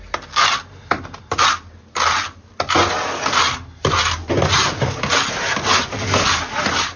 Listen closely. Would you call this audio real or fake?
real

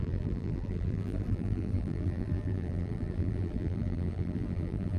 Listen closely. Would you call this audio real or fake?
fake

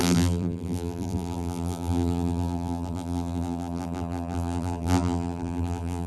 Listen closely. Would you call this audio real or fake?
fake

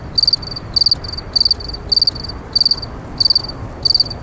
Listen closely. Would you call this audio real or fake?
real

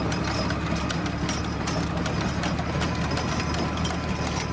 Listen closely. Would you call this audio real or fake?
real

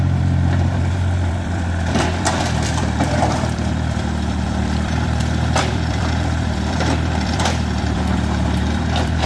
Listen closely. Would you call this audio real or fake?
fake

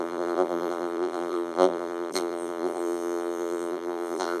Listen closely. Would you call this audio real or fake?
fake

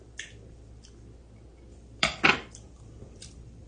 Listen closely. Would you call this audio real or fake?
fake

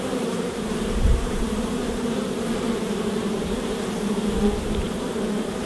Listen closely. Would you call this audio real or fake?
fake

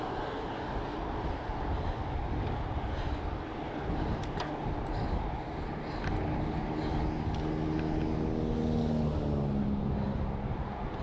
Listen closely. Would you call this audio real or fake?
real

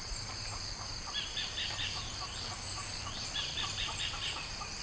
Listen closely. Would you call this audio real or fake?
fake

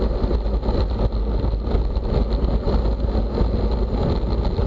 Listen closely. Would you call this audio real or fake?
real